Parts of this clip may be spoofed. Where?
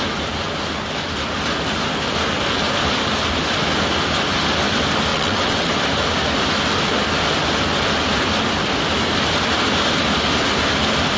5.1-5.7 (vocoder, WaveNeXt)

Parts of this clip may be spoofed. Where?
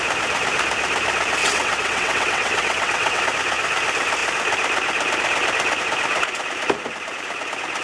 1.4-3.2 (vocoder, WaveNeXt)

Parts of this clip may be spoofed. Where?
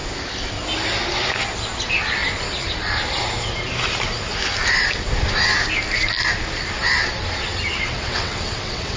7.7-9.0 (vocoder, WaveNeXt)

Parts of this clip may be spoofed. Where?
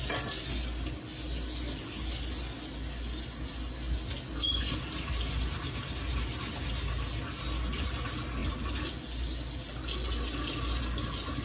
none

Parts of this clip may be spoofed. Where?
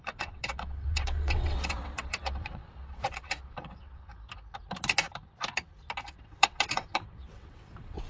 0.0-4.1 (vocoder, WaveNeXt); 6.1-8.1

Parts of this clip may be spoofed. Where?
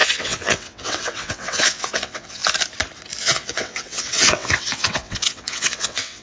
0.0-2.4 (vocoder, WaveNeXt); 3.2-6.2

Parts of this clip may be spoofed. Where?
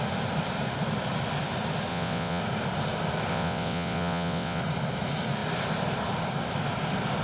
1.9-2.4 (vocoder, WaveNeXt); 3.3-4.6